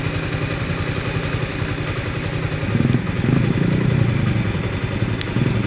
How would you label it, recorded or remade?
recorded